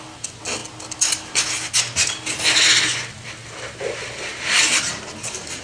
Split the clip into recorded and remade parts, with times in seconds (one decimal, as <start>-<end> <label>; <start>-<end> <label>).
0.0-5.6 recorded